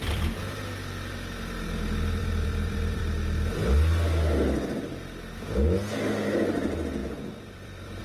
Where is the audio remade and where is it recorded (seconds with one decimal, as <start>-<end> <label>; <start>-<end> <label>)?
0.0-3.0 remade; 3.0-6.5 recorded; 6.5-8.0 remade